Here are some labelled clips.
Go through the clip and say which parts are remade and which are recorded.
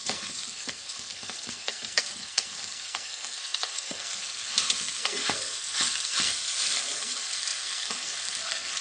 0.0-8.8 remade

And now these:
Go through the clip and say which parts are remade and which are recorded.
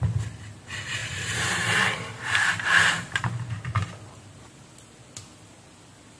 0.0-1.0 recorded; 1.0-3.9 remade; 3.9-6.2 recorded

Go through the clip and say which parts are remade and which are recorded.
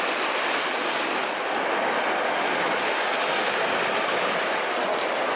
0.0-5.4 recorded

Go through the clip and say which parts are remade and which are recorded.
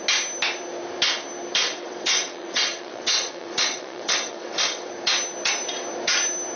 0.0-1.6 recorded; 1.6-4.9 remade; 4.9-6.6 recorded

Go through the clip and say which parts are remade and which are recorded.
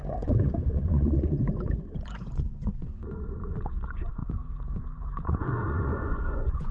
0.0-6.7 remade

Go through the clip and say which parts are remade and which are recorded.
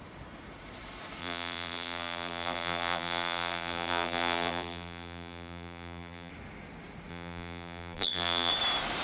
0.0-1.2 recorded; 1.2-6.3 remade; 6.3-7.1 recorded; 7.1-8.5 remade; 8.5-9.0 recorded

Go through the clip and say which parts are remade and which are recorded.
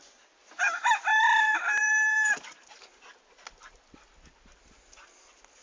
0.0-1.1 recorded; 1.1-2.3 remade; 2.3-5.6 recorded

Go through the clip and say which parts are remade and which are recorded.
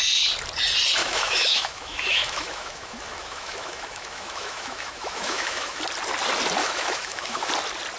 0.0-1.0 recorded; 1.0-5.8 remade; 5.8-6.6 recorded; 6.6-7.5 remade; 7.5-8.0 recorded